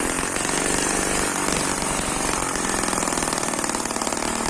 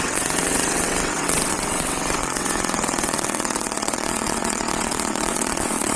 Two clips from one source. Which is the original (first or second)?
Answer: first